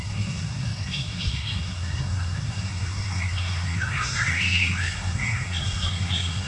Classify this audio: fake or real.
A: fake